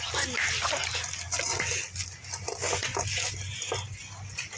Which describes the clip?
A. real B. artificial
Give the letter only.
A